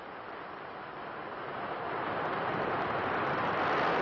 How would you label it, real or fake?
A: real